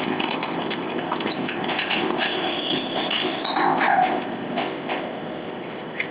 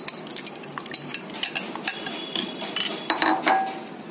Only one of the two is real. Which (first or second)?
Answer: second